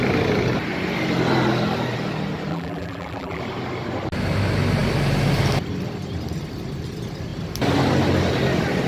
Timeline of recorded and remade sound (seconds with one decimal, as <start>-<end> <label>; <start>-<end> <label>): 0.0-2.5 recorded; 2.5-3.4 remade; 3.4-8.9 recorded